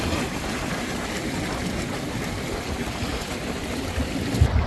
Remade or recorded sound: recorded